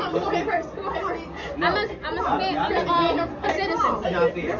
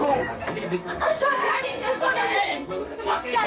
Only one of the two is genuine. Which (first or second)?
first